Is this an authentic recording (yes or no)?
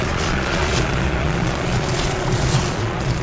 no